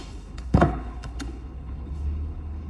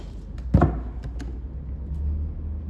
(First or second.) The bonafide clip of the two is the second